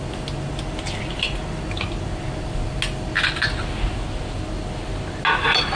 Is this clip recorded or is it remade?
recorded